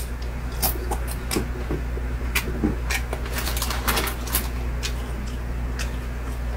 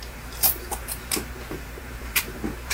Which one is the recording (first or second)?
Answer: first